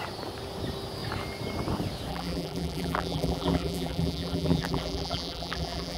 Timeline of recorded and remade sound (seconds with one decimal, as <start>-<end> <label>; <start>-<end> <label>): 0.0-2.1 recorded; 2.1-6.0 remade